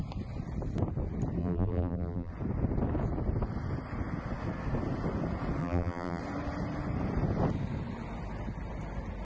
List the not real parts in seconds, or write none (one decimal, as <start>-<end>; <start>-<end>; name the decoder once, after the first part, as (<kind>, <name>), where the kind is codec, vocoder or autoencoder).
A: 1.4-2.3 (vocoder, BigVGAN v2); 5.6-6.2